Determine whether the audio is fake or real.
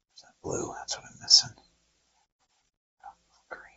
fake